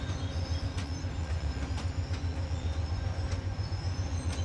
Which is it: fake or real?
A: fake